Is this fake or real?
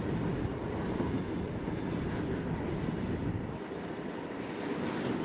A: real